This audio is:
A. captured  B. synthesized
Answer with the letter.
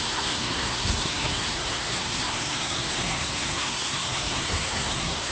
B